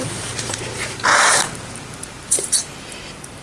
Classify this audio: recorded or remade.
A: remade